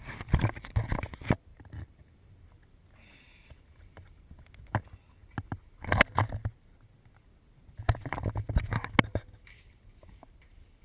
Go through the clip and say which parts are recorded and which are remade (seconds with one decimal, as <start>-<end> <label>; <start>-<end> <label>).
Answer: 0.0-1.5 recorded; 1.5-2.3 remade; 2.3-10.8 recorded